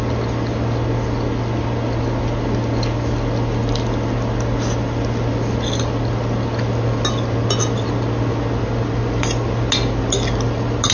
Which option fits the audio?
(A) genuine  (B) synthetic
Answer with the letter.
A